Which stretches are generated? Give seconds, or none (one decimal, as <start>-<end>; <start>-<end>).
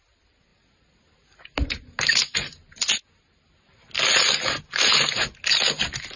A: none